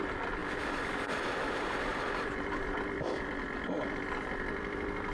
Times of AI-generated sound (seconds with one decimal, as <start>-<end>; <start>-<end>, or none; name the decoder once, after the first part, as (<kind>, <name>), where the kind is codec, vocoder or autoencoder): 0.4-1.1 (vocoder, BigVGAN v2); 1.9-5.1